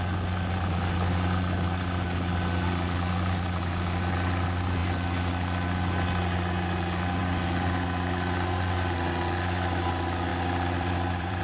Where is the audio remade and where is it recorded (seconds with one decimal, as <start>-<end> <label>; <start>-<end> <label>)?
0.0-10.3 recorded; 10.3-11.4 remade